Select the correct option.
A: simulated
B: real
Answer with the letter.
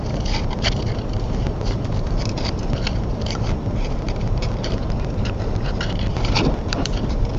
A